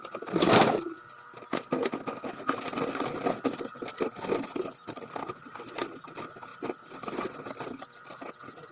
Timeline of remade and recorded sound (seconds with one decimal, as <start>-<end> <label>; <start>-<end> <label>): 0.0-8.7 recorded